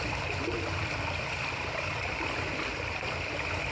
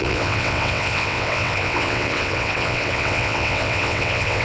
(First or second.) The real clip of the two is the first